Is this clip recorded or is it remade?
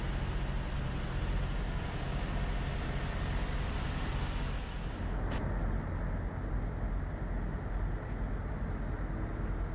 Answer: recorded